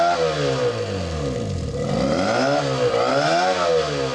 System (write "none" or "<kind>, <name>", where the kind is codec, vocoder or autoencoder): none